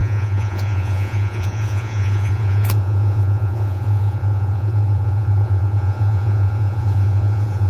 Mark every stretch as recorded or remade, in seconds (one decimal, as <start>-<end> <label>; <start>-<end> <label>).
0.0-7.7 remade